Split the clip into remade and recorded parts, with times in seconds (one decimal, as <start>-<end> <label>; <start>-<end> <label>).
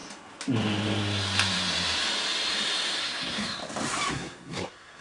0.0-3.0 recorded; 3.0-3.6 remade; 3.6-4.1 recorded; 4.1-5.0 remade